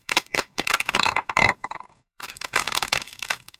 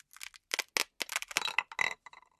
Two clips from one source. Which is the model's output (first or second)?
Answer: first